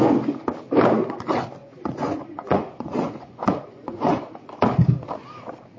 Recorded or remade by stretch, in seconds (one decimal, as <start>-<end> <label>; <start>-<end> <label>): 0.0-1.6 recorded; 1.6-4.3 remade; 4.3-5.8 recorded